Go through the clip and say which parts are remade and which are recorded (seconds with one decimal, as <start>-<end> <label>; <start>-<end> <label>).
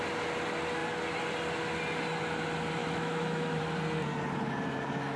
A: 0.0-2.8 recorded; 2.8-3.6 remade; 3.6-5.2 recorded